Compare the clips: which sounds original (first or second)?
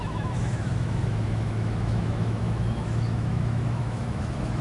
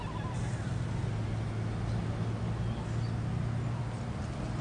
second